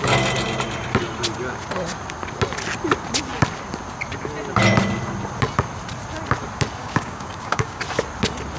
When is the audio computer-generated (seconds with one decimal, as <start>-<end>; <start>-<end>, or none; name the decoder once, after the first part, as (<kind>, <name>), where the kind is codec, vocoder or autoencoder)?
6.8-7.8 (codec, DAC)